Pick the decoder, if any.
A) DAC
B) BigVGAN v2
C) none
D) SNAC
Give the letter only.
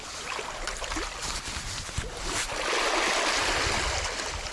C